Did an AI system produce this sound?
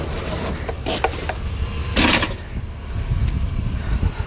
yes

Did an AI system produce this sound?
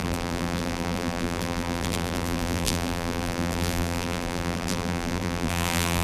yes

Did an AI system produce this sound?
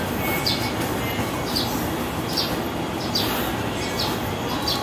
no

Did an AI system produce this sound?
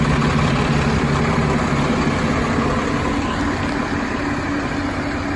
no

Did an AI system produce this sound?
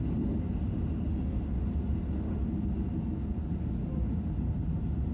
no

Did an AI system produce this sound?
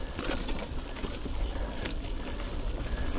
yes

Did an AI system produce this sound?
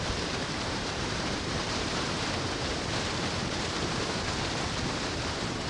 yes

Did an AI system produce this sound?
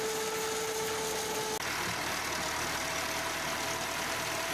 no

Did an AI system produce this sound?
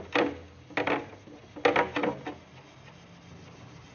no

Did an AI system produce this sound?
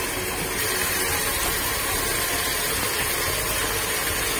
no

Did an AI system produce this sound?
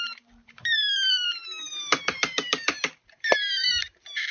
yes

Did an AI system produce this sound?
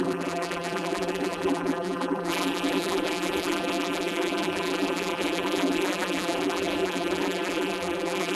yes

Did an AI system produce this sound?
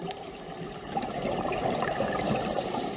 yes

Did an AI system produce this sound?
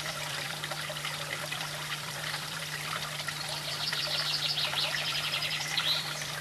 yes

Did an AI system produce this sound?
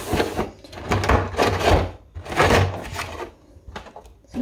no